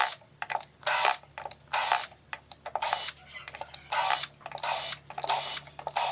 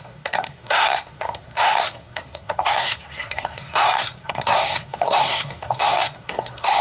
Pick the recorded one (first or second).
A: first